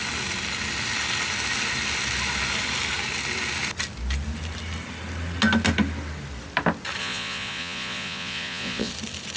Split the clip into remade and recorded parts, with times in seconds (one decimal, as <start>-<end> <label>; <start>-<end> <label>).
0.0-7.0 recorded; 7.0-8.9 remade; 8.9-9.4 recorded